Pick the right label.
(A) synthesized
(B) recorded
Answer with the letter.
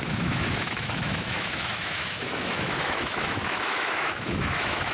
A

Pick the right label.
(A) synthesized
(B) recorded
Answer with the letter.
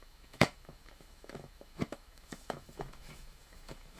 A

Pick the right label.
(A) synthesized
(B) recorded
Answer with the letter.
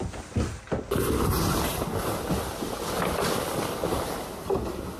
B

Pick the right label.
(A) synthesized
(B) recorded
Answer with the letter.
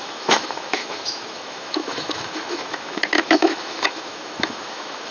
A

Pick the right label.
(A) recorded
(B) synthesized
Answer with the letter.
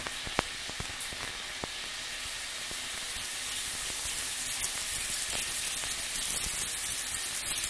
A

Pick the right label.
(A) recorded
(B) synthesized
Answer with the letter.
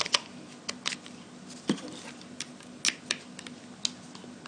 A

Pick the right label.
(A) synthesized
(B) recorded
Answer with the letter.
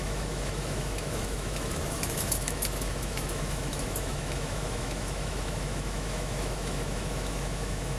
A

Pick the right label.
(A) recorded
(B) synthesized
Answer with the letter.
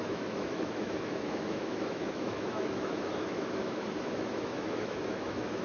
B